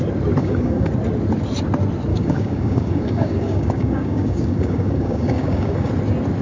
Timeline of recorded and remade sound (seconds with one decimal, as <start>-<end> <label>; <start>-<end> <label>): 0.0-0.4 recorded; 0.4-0.9 remade; 0.9-2.1 recorded; 2.1-5.9 remade; 5.9-6.4 recorded